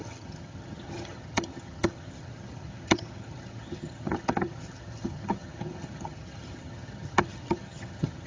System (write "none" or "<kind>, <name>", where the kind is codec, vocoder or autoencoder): vocoder, HiFi-GAN